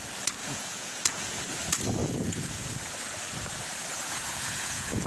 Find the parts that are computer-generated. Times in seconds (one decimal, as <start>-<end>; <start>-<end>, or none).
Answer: 0.4-1.4; 2.0-2.7; 3.9-5.1